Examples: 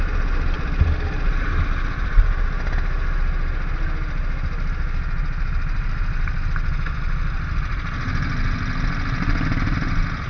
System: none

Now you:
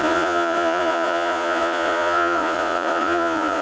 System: vocoder, Vocos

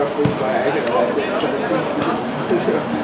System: none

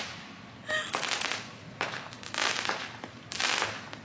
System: none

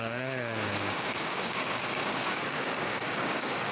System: codec, DAC